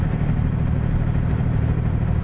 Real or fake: fake